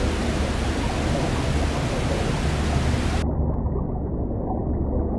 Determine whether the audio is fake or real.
real